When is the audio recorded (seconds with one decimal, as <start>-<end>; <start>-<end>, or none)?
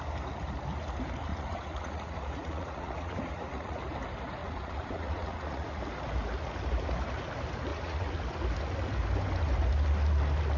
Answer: 0.0-1.3; 3.8-4.4; 5.8-7.7; 8.2-10.6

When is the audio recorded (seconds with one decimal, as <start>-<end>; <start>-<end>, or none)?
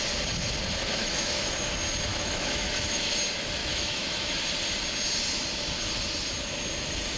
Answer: 0.0-1.0; 1.7-2.1; 3.1-3.6; 4.4-7.2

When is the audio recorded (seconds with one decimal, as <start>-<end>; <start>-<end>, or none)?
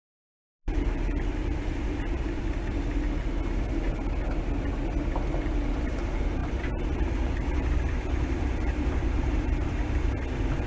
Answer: 2.4-6.4; 9.9-10.7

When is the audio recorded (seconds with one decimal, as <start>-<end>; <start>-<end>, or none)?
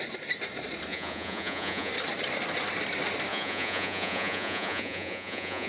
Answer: 0.0-0.9; 1.9-3.3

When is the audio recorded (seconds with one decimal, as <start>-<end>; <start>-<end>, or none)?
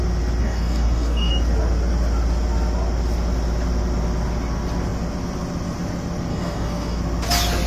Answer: 0.0-0.4; 1.3-6.3; 7.0-7.7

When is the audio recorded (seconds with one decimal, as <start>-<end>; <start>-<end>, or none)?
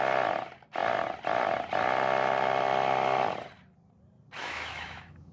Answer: 0.0-4.4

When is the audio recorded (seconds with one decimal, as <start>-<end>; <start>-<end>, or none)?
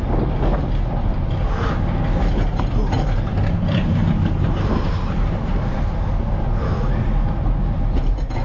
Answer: 0.0-1.1; 1.7-3.3; 6.1-8.4